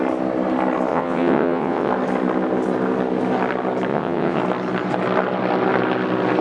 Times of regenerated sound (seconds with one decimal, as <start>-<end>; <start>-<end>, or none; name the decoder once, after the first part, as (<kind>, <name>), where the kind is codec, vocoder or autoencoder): 0.9-1.9 (vocoder, WaveNeXt); 3.9-4.4